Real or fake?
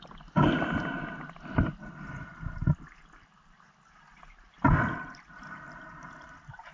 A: real